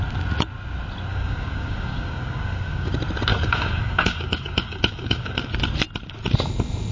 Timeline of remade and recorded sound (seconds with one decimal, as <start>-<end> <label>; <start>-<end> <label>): 0.0-1.1 recorded; 1.1-2.9 remade; 2.9-3.3 recorded; 3.3-5.5 remade; 5.5-6.9 recorded